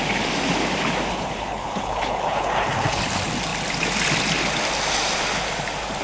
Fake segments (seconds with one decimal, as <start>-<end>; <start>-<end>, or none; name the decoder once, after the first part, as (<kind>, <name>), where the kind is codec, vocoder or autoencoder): 1.1-3.0 (codec, HILCodec)